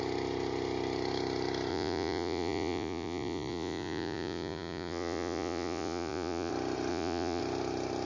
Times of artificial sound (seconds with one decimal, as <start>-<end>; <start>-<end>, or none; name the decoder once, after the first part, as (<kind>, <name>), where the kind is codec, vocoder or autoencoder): 1.7-6.5 (vocoder, Vocos); 6.9-7.4